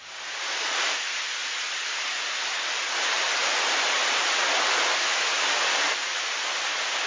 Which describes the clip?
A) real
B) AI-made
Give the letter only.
A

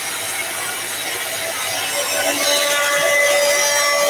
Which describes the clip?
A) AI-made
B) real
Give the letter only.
B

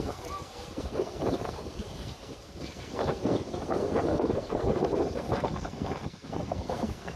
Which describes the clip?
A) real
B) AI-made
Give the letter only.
B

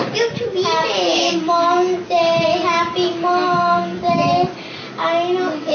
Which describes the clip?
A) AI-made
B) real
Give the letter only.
B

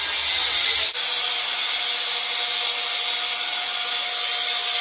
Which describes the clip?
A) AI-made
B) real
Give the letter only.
B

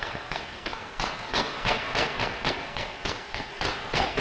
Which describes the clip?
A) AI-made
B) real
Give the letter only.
A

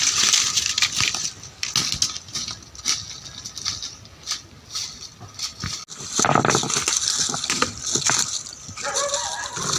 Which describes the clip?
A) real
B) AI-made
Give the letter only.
A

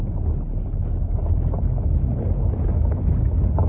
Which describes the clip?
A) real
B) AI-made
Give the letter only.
A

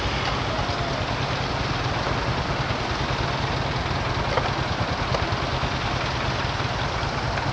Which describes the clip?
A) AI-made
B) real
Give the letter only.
B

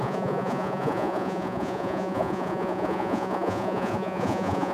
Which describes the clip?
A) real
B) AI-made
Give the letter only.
B